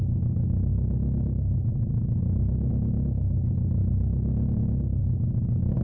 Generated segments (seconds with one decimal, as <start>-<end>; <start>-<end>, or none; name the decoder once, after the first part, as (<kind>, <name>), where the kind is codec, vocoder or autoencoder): none